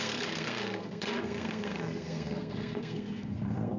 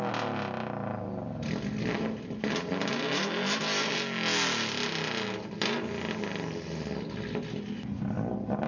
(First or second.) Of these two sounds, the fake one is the first